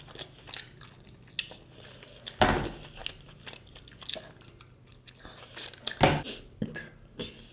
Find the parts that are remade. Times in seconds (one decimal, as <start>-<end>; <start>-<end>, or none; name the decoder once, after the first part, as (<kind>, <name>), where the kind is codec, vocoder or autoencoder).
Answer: none